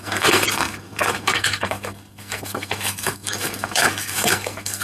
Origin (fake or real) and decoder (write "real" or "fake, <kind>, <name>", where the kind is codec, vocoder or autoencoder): fake, codec, SNAC